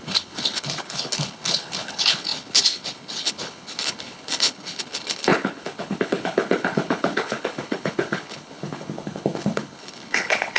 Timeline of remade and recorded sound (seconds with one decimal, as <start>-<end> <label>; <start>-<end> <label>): 0.0-10.6 remade